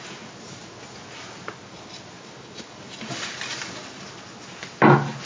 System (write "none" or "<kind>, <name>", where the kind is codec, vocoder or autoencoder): none